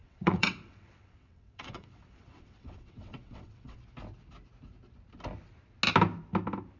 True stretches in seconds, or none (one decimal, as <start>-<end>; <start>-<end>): 3.8-6.8